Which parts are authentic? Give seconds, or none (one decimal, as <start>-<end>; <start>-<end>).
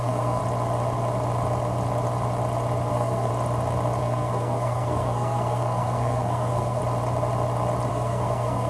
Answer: 0.4-2.9; 3.3-4.0; 6.8-7.9